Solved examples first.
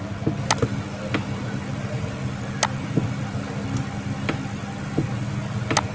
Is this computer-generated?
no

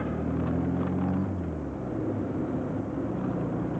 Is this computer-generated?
no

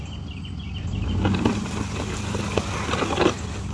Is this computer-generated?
no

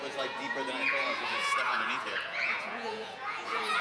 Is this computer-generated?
yes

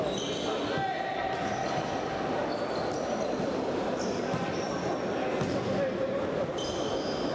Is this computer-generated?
no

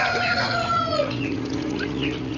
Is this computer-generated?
yes